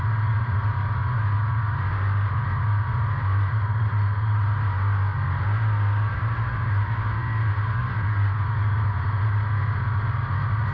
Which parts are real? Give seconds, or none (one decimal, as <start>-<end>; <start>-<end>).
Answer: 0.0-10.7